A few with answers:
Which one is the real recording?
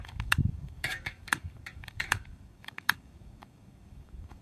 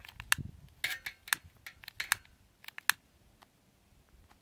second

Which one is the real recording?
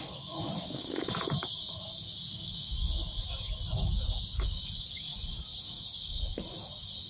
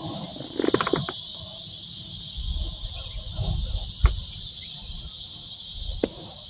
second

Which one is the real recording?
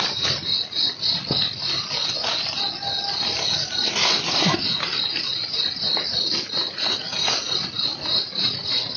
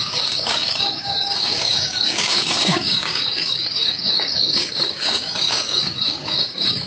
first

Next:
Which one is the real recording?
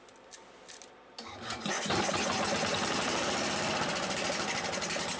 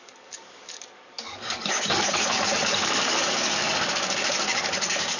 first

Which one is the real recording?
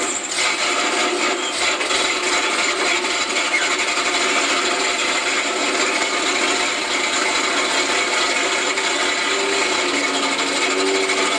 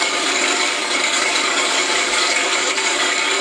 first